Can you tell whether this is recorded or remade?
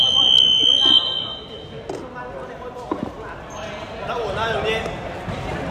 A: recorded